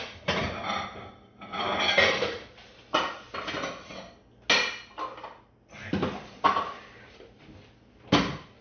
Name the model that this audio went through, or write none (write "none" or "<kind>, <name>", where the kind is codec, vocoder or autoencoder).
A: none